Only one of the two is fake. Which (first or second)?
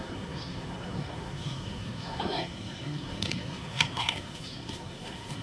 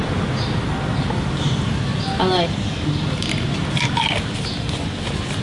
first